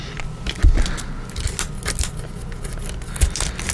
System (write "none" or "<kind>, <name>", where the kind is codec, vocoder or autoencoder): none